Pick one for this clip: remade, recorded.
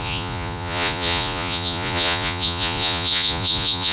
remade